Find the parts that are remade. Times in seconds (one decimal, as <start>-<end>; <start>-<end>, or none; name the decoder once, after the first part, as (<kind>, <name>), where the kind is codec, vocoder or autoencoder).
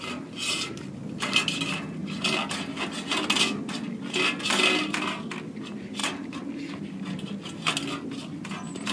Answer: none